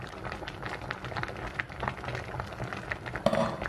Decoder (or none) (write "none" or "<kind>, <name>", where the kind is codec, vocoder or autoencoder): none